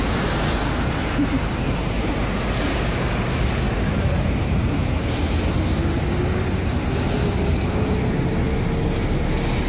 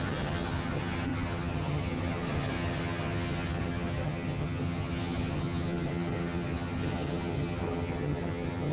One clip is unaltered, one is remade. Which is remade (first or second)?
second